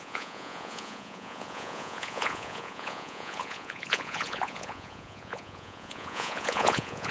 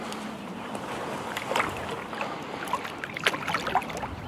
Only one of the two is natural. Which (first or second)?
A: second